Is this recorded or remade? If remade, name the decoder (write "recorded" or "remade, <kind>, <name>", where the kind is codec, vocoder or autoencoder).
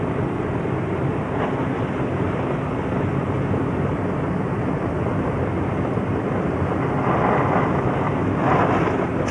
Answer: recorded